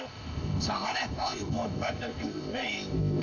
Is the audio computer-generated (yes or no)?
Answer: yes